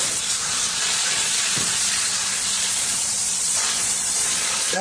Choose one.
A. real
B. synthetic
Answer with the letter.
B